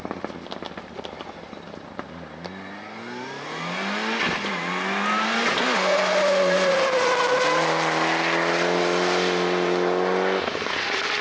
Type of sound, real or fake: real